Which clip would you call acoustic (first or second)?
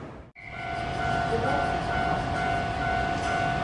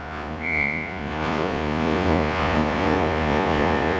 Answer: first